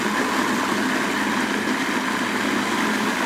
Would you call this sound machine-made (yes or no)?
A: no